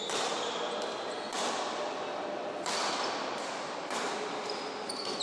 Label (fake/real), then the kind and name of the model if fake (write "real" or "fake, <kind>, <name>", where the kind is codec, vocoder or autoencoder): real